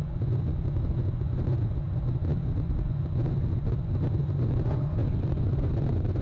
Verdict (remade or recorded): remade